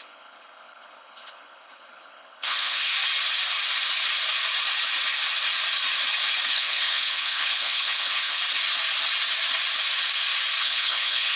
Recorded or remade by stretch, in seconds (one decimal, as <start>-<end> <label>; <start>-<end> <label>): 0.0-2.9 remade; 2.9-6.5 recorded; 6.5-8.4 remade; 8.4-10.6 recorded; 10.6-11.4 remade